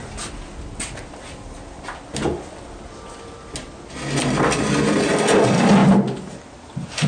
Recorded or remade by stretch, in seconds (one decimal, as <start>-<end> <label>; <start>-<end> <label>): 0.0-5.8 recorded; 5.8-6.4 remade; 6.4-7.1 recorded